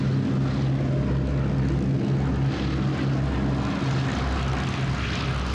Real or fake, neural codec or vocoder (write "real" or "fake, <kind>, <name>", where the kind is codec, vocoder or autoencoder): real